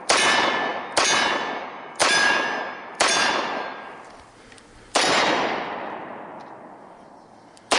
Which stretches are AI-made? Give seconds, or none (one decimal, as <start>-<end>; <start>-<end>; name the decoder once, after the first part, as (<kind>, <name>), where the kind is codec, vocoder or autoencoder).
0.0-0.7 (vocoder, BigVGAN v2); 1.4-6.1